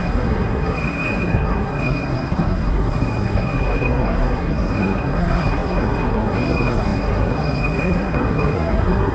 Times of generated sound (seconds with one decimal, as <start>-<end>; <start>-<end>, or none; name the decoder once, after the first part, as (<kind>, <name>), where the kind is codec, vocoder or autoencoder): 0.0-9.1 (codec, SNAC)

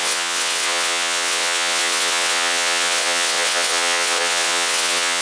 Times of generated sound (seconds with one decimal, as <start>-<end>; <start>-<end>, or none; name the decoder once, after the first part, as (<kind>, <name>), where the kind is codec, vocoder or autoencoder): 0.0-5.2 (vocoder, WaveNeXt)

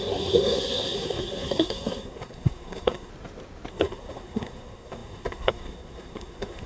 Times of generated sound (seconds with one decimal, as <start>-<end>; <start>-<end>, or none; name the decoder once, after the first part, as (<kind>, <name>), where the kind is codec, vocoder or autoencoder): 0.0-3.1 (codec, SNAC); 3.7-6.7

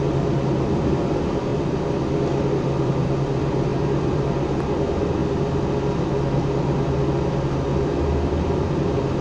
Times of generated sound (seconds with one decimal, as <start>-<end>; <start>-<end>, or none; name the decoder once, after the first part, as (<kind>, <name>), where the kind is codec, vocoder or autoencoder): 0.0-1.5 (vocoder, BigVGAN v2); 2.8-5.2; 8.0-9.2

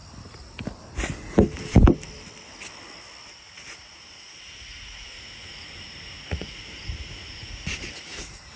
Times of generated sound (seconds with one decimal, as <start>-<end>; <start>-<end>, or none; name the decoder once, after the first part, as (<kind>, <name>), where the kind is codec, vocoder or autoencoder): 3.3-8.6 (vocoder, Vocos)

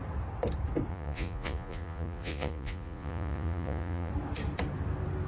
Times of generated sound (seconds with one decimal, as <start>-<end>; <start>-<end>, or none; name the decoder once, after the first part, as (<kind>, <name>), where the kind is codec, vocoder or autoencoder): 0.9-4.1 (vocoder, Vocos)

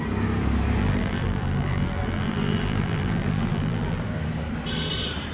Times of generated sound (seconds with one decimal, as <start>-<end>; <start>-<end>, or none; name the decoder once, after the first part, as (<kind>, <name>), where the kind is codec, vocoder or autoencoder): 0.8-4.0 (vocoder, BigVGAN v2)